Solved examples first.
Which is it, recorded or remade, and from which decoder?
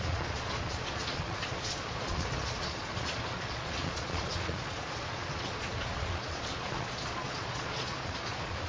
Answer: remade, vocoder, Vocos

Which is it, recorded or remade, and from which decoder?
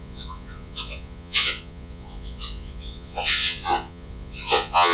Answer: remade, vocoder, Vocos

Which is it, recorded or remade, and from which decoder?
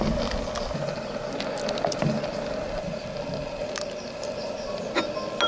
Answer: recorded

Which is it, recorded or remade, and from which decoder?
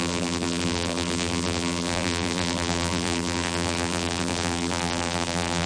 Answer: remade, vocoder, BigVGAN v2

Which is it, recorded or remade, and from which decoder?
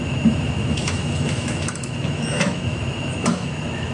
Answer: remade, autoencoder, DAC-VAE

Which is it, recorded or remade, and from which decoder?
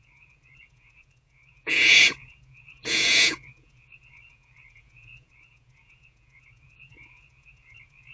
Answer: remade, vocoder, Vocos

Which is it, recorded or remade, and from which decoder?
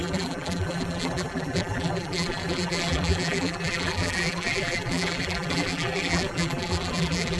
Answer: remade, vocoder, BigVGAN v2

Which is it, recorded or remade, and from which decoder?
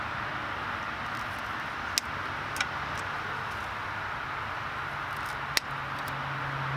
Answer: recorded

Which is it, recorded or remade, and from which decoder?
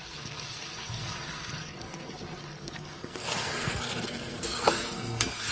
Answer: remade, codec, SNAC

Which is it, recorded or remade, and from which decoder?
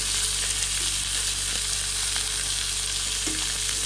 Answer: recorded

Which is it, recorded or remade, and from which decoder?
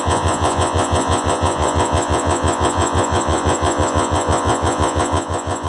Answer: remade, vocoder, Vocos